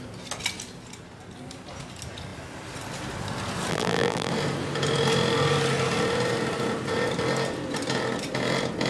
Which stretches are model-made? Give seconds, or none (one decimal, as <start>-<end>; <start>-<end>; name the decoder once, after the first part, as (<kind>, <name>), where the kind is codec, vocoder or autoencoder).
3.7-4.3 (vocoder, BigVGAN v2)